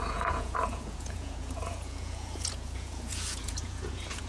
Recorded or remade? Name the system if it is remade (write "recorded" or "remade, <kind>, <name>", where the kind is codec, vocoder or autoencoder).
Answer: remade, vocoder, Vocos